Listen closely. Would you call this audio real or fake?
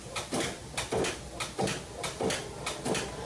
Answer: real